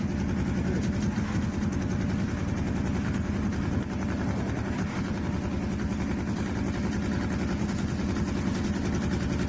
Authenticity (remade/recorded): recorded